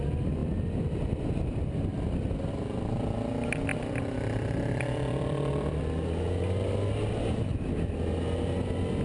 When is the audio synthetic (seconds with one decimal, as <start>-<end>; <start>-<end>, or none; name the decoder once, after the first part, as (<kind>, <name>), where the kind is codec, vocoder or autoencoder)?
3.7-5.8 (vocoder, BigVGAN v2)